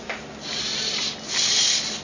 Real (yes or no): yes